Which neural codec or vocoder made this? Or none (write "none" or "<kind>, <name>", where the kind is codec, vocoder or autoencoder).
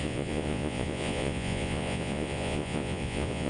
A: vocoder, Vocos